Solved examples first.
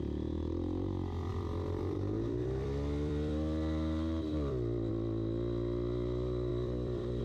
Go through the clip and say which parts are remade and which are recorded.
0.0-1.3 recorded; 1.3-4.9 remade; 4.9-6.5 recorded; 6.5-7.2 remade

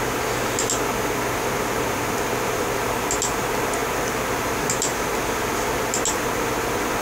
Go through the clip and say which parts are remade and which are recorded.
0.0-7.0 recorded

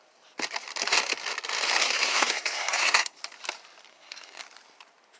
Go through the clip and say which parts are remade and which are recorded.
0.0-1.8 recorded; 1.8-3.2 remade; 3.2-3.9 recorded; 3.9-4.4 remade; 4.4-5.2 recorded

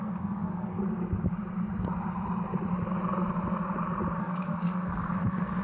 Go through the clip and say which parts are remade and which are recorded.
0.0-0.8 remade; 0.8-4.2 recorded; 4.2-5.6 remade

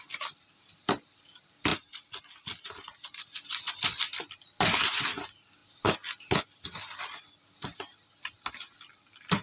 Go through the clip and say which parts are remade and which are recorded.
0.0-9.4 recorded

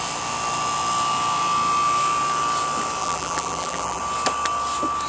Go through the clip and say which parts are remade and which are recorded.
0.0-3.0 recorded; 3.0-4.0 remade; 4.0-5.1 recorded

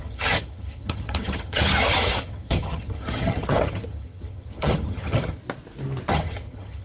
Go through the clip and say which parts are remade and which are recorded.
0.0-5.4 remade; 5.4-6.1 recorded; 6.1-6.8 remade